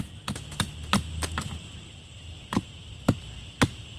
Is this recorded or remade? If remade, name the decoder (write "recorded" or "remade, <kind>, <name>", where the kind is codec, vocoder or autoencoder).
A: recorded